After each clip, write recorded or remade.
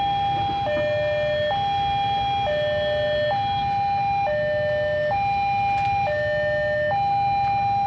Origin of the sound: recorded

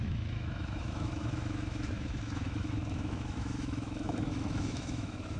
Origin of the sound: remade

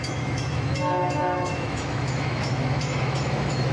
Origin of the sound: remade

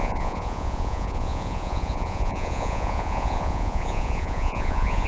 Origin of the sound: remade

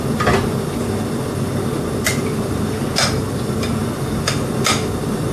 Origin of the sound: recorded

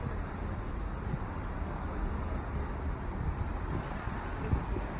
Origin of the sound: recorded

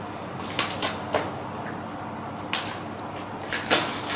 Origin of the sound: recorded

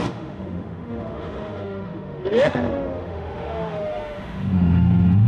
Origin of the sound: remade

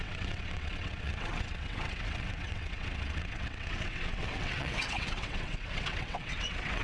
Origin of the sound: remade